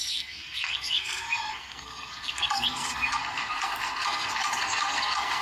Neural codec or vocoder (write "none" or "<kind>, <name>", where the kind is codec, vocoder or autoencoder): codec, SNAC